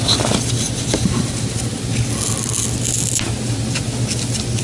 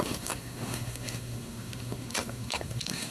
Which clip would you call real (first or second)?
first